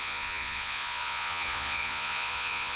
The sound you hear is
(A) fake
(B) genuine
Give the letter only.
A